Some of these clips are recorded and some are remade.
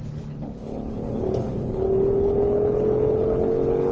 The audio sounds remade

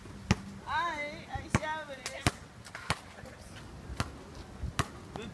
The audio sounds recorded